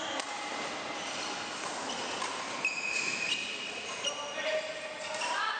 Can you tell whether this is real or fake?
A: real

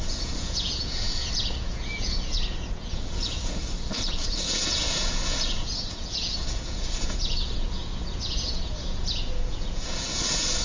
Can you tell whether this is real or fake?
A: fake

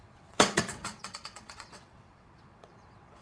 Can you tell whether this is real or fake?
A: fake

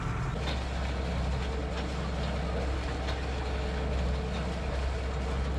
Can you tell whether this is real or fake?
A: real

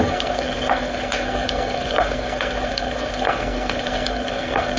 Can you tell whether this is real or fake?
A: fake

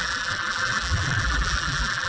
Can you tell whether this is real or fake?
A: fake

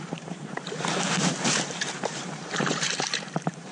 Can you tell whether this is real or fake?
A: fake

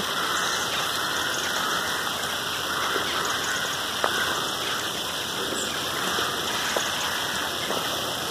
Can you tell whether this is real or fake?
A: real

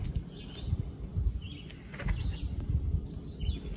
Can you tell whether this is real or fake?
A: real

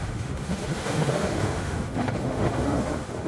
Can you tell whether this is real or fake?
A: fake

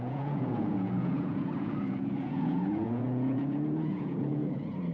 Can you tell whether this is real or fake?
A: fake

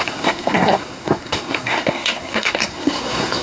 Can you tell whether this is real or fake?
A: fake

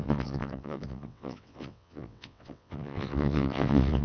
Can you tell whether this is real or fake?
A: fake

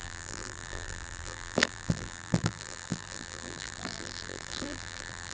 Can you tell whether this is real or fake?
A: fake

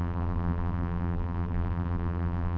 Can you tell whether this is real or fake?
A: fake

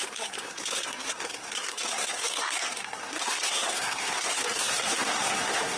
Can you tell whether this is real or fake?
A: fake